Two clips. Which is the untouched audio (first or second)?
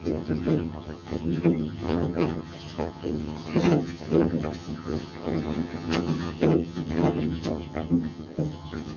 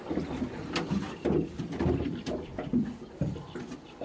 second